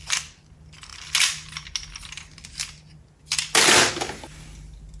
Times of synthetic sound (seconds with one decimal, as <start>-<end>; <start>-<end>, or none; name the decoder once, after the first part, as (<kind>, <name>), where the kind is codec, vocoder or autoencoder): none

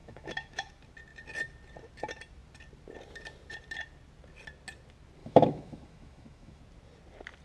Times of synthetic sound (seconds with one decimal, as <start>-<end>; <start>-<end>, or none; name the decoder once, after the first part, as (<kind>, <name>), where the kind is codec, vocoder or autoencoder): 0.0-0.7 (autoencoder, DAC-VAE); 5.2-6.6

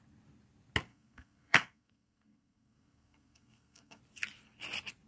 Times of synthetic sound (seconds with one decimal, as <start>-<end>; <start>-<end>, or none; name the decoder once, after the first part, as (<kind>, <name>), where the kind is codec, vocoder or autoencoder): 0.9-4.0 (codec, SNAC)

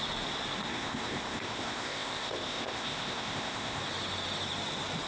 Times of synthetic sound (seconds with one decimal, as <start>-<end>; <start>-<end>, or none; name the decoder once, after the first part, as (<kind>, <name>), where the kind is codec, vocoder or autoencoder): 0.7-3.8 (codec, ZipCodec)